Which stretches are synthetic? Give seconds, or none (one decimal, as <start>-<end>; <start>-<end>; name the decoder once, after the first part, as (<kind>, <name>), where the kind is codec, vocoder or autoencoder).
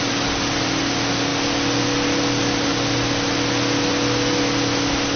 none